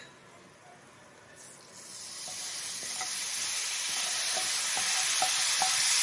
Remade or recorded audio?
recorded